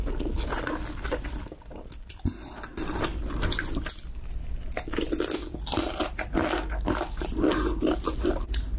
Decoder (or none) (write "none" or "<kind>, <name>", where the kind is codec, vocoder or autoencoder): none